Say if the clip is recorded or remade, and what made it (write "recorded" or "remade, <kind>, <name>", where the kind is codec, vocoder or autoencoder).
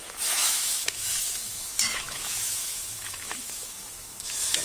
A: remade, autoencoder, DAC-VAE